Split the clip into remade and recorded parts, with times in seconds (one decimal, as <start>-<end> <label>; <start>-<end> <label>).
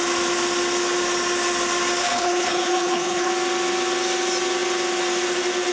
0.0-2.0 recorded; 2.0-3.3 remade; 3.3-5.7 recorded